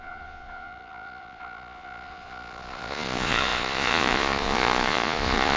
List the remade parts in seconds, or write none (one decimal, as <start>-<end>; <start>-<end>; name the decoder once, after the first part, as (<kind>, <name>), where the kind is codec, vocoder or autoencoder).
0.0-5.6 (vocoder, Vocos)

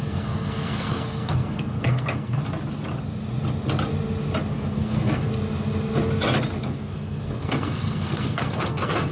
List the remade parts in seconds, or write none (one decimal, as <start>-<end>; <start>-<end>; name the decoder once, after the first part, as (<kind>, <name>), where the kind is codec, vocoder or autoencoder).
0.0-2.4 (codec, SNAC); 4.5-5.3; 6.7-9.1

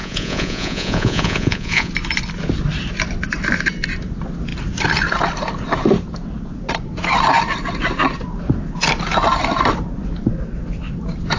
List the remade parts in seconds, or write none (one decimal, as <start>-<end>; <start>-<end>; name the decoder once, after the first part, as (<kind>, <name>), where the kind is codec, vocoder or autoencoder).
0.0-1.9 (vocoder, Vocos)

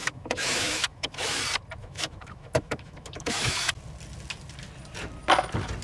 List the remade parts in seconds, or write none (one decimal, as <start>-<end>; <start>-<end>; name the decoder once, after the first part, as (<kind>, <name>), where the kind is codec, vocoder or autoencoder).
0.0-1.4 (autoencoder, DAC-VAE); 1.8-3.7

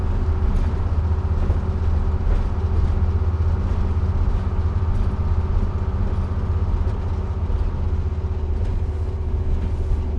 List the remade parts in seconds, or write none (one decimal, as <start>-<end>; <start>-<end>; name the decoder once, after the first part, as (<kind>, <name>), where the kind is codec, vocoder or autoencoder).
none

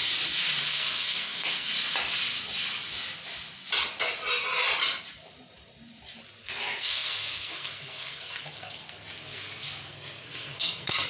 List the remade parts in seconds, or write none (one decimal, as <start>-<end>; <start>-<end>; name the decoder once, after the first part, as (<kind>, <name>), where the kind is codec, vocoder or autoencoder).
0.6-1.7 (codec, SNAC); 6.4-11.1

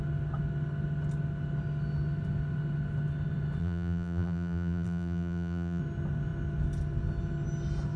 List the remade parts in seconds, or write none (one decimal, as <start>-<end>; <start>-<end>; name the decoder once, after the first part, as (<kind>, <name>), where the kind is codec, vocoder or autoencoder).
3.6-5.8 (vocoder, BigVGAN v2)

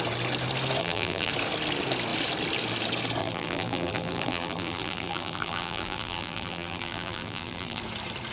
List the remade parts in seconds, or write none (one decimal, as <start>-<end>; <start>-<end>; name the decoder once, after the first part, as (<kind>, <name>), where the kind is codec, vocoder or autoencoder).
0.8-1.3 (vocoder, BigVGAN v2); 3.2-7.8